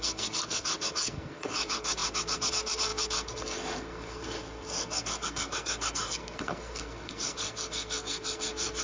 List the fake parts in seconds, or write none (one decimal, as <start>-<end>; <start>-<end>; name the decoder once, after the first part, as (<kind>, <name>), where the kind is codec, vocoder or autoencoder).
0.0-8.8 (codec, SNAC)